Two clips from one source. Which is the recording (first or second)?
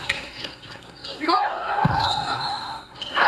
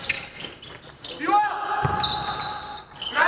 second